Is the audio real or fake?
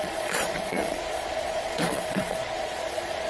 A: fake